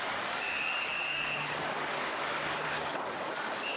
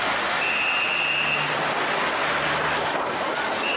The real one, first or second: second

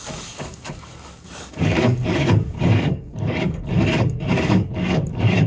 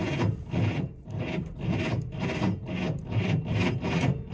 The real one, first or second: second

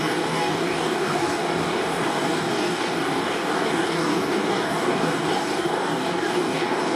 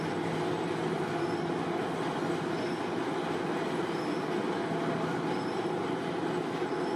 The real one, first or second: second